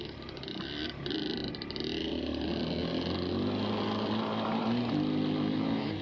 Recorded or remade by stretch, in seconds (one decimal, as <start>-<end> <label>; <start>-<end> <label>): 0.0-6.0 recorded